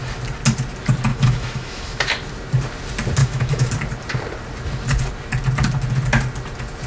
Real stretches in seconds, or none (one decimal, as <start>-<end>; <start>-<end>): 0.0-1.1; 2.0-3.2; 3.7-6.9